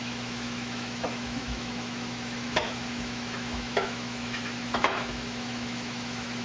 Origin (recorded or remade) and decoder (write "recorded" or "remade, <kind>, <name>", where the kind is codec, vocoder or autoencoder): remade, autoencoder, DAC-VAE